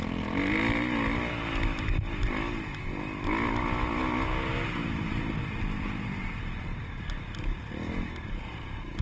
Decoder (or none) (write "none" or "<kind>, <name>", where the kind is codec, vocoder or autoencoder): none